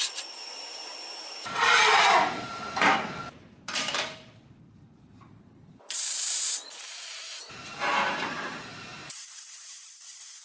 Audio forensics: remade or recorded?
remade